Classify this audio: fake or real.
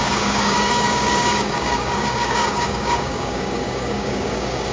fake